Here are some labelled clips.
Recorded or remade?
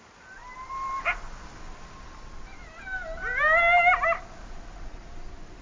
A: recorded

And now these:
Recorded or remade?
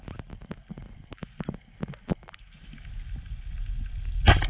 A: recorded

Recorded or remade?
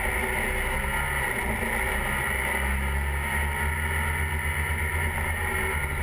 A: recorded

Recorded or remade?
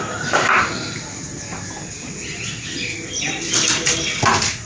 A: recorded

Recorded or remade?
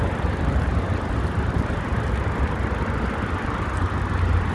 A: recorded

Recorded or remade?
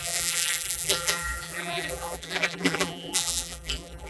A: remade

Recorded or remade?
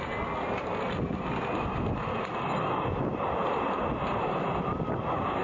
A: recorded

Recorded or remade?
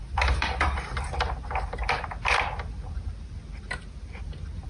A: remade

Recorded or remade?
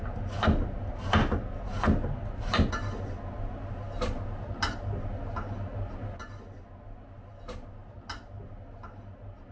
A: recorded